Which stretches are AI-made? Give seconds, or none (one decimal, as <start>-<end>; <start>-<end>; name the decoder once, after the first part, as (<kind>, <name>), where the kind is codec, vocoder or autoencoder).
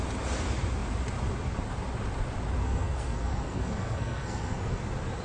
2.6-4.8 (codec, SNAC)